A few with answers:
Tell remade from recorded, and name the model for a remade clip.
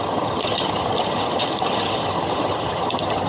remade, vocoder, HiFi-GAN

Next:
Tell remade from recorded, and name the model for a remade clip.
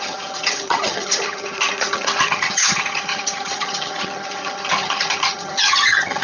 remade, vocoder, HiFi-GAN